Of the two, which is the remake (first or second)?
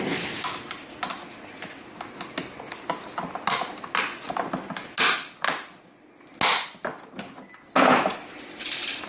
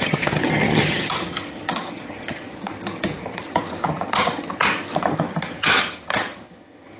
second